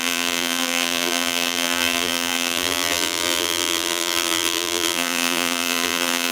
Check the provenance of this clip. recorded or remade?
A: remade